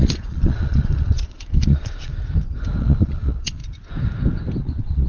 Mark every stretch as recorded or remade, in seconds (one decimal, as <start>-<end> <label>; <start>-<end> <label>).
0.0-2.1 remade; 2.1-2.8 recorded; 2.8-3.6 remade; 3.6-4.6 recorded; 4.6-5.1 remade